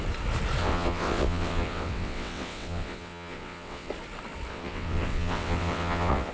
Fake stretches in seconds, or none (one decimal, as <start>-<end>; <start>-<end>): 0.6-3.9; 4.5-6.3

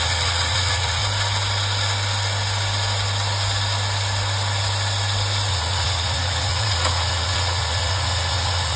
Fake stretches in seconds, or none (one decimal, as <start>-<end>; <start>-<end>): 0.0-1.0; 5.5-8.8

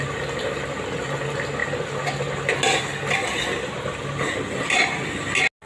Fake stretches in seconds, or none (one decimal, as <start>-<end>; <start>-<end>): none

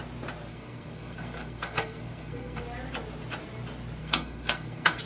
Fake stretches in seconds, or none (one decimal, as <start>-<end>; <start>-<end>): 0.5-2.6; 4.0-5.0

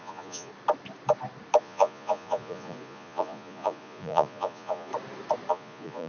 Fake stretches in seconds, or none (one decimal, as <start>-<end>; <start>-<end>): 0.0-0.5; 1.6-4.9; 5.5-6.1

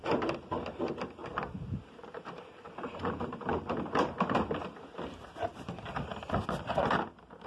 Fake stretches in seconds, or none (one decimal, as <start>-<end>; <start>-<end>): 1.2-3.7

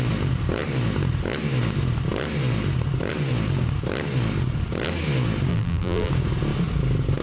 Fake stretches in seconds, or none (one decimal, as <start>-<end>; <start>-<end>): 5.5-6.1

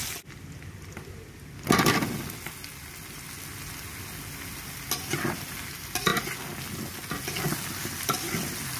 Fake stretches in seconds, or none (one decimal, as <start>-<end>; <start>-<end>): none